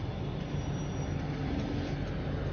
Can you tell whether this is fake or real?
real